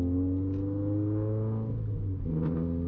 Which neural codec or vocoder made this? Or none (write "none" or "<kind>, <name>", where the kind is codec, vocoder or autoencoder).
none